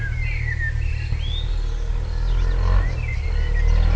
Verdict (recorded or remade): recorded